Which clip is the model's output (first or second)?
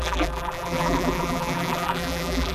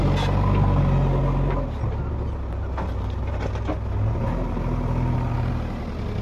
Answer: first